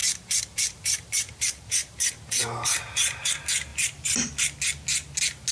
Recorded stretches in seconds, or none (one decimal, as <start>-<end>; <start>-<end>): 3.3-3.7; 4.6-5.5